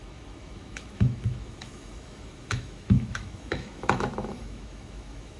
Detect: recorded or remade remade